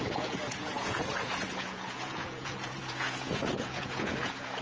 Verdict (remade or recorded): remade